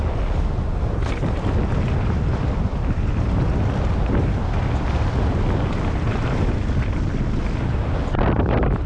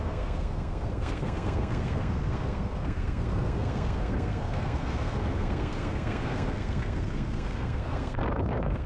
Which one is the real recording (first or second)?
first